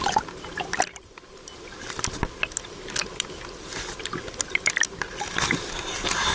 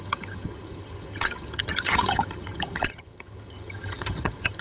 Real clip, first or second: first